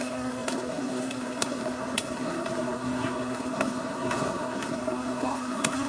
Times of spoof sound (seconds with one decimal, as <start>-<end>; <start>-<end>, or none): 0.0-5.9